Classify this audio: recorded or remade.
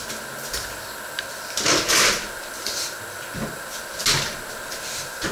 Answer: recorded